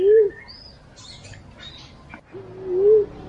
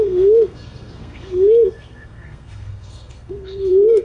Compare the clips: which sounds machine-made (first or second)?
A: second